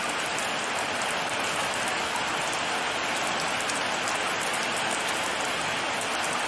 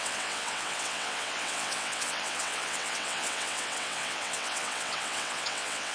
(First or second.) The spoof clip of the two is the second